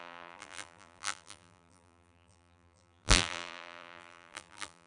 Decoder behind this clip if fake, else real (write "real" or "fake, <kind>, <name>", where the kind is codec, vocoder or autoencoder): fake, vocoder, BigVGAN v2